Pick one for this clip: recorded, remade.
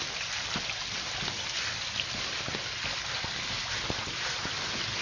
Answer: recorded